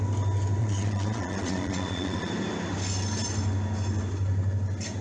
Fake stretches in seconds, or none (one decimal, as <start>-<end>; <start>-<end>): 0.6-2.3